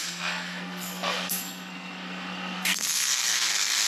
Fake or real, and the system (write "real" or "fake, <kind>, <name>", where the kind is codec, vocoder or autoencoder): fake, codec, SNAC